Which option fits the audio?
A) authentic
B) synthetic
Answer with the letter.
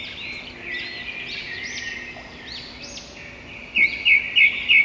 A